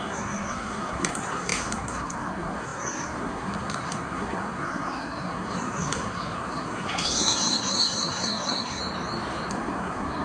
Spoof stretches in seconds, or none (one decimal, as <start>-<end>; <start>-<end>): 0.0-8.8; 9.5-10.2